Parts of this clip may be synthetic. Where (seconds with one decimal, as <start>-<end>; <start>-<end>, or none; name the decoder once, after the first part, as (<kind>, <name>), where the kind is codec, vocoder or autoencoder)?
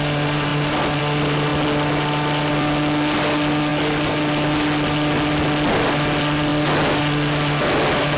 none